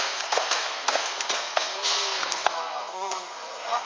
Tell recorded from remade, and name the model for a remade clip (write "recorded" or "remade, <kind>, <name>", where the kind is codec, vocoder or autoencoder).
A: remade, codec, SNAC